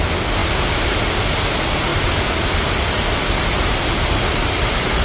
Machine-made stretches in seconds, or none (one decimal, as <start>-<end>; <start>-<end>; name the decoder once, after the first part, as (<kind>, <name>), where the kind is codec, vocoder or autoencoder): none